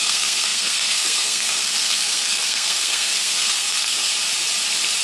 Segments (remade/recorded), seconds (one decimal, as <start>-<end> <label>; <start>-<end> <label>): 0.0-4.1 remade; 4.1-5.0 recorded